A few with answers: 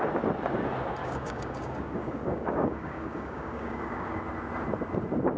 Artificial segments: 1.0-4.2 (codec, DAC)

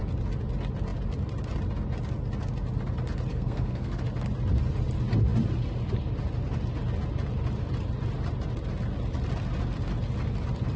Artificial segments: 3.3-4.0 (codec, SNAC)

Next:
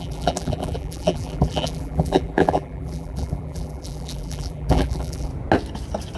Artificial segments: 0.0-5.3 (vocoder, BigVGAN v2)

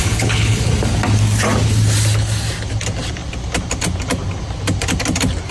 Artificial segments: 0.0-0.7 (codec, HILCodec)